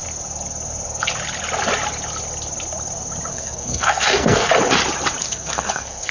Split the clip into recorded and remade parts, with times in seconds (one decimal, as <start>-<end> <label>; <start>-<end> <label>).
0.0-3.3 recorded; 3.3-4.5 remade; 4.5-5.2 recorded; 5.2-6.1 remade